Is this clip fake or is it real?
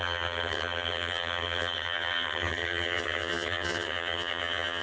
fake